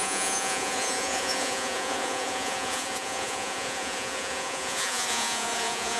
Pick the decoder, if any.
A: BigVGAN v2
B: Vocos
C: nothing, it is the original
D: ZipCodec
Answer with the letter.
B